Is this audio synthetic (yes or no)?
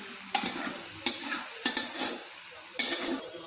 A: no